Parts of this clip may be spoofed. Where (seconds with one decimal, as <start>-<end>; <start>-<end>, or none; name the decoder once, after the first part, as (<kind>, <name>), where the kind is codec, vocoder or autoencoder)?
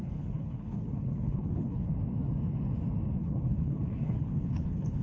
0.0-1.9 (codec, HILCodec); 3.2-5.0